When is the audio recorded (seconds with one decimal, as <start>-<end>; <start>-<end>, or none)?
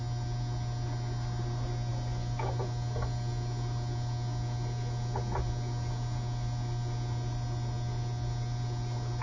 0.0-9.2